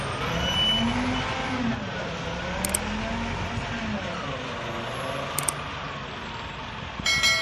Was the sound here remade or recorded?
recorded